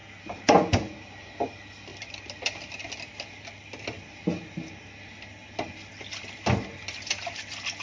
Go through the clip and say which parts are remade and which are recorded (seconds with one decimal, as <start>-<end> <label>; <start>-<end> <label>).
0.0-7.8 recorded